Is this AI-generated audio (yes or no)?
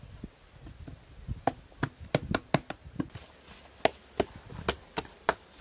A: no